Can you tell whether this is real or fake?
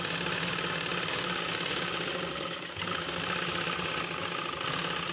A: real